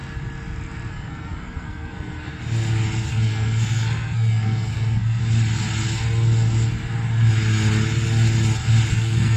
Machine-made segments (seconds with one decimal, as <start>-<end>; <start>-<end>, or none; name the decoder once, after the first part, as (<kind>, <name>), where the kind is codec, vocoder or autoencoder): 0.9-2.3 (codec, SNAC); 3.1-5.2; 8.9-9.4